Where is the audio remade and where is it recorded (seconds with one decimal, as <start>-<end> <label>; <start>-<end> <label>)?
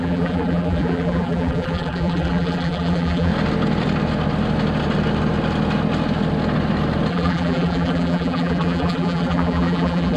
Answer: 0.0-3.3 remade; 3.3-7.1 recorded; 7.1-10.2 remade